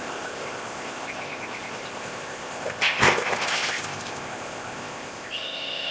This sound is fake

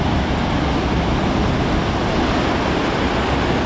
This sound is real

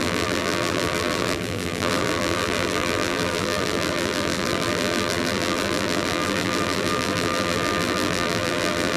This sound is fake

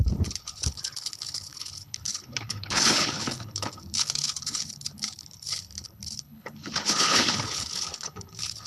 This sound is fake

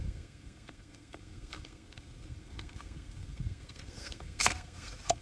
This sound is fake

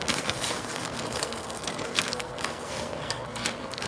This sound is fake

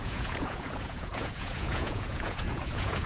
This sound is fake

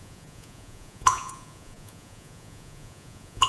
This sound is fake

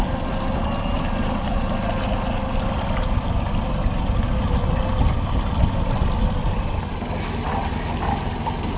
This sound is real